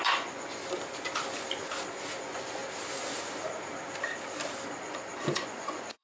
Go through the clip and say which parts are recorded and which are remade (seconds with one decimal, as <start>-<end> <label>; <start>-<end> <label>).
0.0-0.6 remade; 0.6-2.2 recorded; 2.2-2.6 remade; 2.6-4.8 recorded; 4.8-6.0 remade